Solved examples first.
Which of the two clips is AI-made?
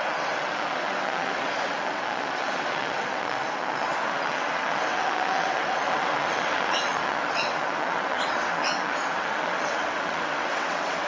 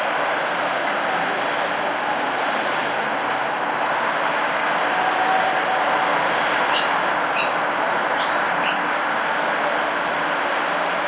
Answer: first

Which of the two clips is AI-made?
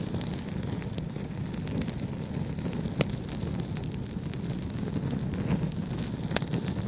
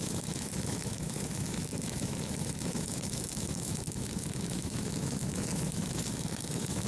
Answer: second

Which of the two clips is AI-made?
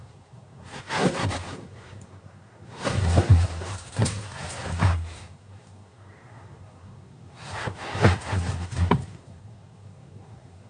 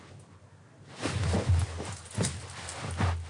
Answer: first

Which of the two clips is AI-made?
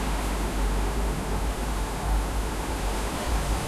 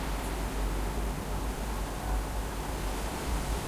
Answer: first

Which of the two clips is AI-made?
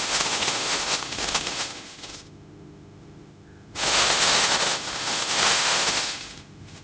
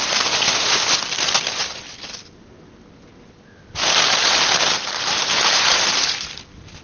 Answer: first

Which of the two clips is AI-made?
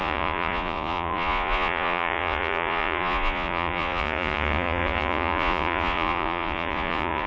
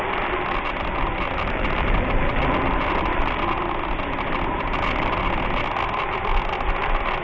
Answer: first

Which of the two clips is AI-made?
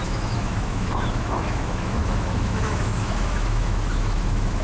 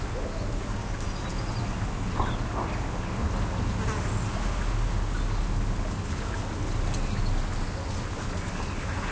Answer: first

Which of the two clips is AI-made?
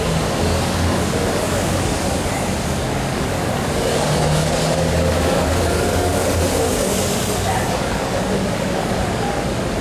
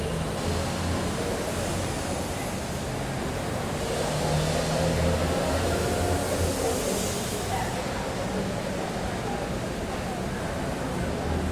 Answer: first